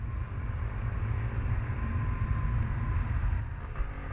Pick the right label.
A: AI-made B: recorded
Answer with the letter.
B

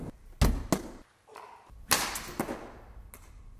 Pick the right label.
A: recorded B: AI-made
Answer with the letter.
A